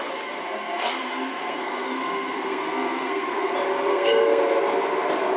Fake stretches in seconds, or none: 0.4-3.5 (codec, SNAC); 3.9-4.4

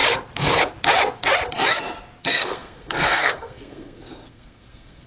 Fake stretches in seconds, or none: 2.2-5.1 (codec, SNAC)

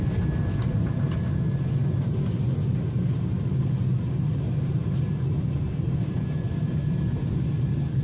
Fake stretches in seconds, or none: none